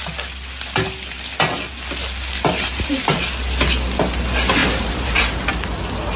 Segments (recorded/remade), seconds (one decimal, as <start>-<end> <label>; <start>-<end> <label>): 0.0-2.5 recorded; 2.5-3.2 remade; 3.2-4.6 recorded; 4.6-5.5 remade; 5.5-6.2 recorded